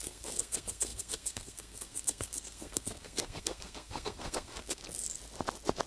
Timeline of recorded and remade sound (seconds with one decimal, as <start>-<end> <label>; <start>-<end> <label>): 0.0-4.8 remade; 4.8-5.9 recorded